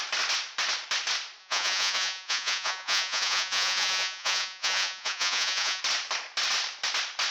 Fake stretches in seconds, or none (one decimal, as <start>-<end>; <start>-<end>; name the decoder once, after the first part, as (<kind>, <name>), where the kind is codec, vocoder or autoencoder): 1.4-5.8 (vocoder, Vocos)